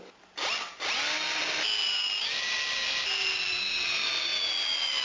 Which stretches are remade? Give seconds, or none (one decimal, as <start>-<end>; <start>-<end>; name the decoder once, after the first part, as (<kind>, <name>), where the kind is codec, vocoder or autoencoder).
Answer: none